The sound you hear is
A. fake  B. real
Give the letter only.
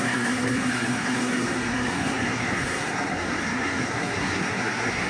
A